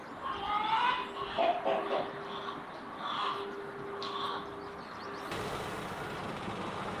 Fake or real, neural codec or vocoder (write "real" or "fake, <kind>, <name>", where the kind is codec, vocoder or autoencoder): real